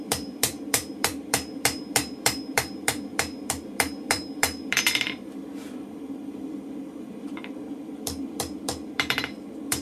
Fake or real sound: fake